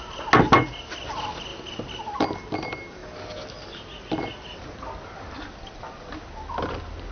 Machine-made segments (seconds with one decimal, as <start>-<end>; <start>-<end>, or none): none

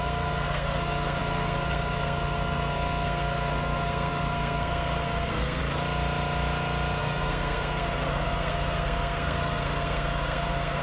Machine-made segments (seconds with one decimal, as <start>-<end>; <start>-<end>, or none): 0.0-5.6; 7.0-10.8

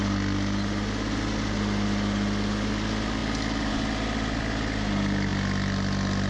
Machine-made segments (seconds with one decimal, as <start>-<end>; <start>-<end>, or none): none

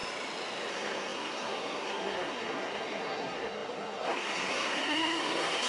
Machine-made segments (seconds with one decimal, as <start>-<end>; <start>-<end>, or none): 0.7-5.7